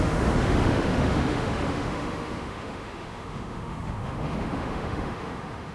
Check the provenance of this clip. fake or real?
fake